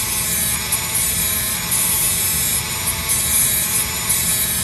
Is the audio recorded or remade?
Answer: remade